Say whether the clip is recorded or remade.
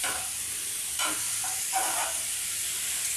recorded